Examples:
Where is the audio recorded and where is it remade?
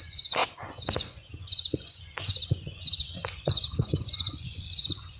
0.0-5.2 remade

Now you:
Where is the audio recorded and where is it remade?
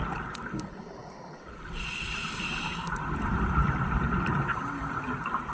0.0-5.5 recorded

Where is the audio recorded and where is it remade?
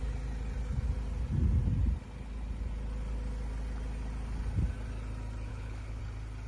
0.0-5.5 recorded; 5.5-6.0 remade; 6.0-6.5 recorded